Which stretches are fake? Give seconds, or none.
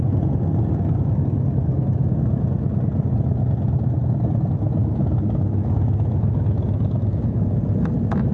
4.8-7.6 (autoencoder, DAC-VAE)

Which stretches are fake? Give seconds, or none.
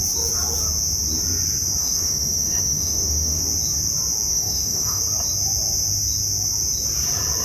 1.8-3.4 (autoencoder, DAC-VAE); 4.3-5.0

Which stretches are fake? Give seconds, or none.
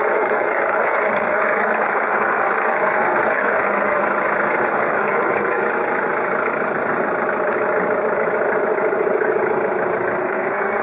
0.0-4.0 (codec, SNAC); 4.6-5.6; 10.2-10.8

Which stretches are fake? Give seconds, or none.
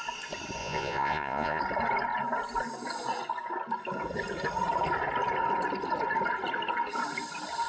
0.6-1.6 (vocoder, Vocos)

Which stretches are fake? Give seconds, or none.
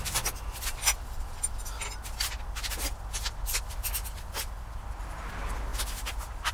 none